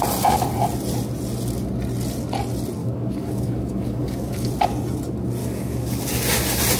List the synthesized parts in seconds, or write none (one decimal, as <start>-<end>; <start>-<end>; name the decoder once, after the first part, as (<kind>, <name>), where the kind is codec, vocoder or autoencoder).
2.8-4.5 (codec, DAC); 5.4-6.0